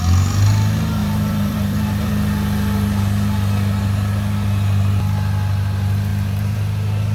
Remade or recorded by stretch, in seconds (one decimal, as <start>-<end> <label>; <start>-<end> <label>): 0.0-1.0 recorded; 1.0-2.1 remade; 2.1-6.1 recorded; 6.1-6.6 remade; 6.6-7.1 recorded